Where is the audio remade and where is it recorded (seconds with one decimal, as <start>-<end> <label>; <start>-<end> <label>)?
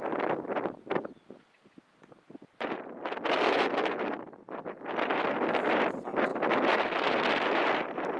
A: 0.0-8.2 recorded